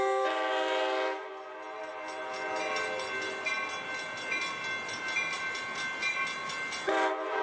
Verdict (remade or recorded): recorded